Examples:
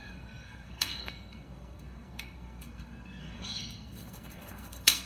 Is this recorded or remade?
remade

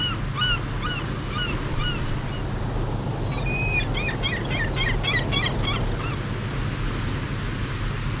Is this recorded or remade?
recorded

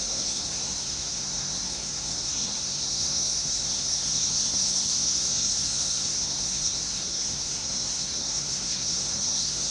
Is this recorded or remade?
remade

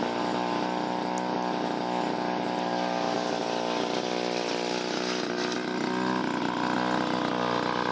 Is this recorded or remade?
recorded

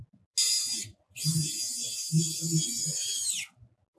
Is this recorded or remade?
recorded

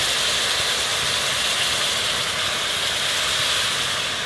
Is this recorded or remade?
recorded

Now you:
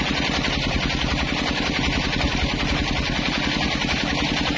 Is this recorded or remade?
recorded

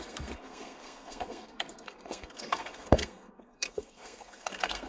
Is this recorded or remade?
remade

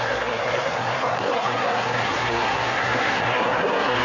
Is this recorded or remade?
remade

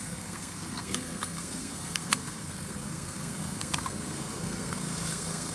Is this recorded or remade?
remade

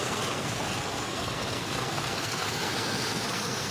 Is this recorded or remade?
remade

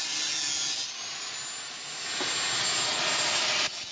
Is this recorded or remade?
recorded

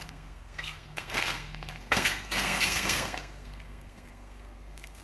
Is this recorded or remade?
remade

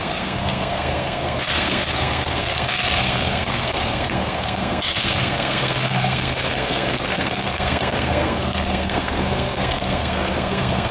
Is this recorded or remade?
remade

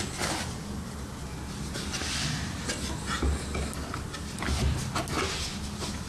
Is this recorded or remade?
recorded